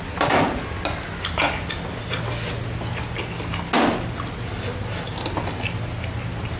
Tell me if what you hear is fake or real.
real